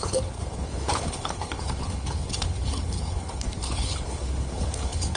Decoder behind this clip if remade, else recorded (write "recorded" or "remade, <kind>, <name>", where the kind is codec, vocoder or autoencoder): remade, codec, HILCodec